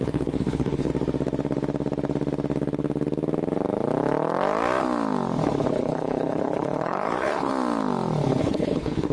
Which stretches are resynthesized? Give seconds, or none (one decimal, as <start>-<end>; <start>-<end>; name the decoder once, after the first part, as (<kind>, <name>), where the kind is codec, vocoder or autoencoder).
0.0-0.9 (codec, HILCodec); 5.7-7.5; 8.4-9.1